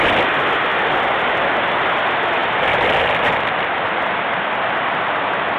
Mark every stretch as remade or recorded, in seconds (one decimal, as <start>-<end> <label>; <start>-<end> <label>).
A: 0.0-5.6 recorded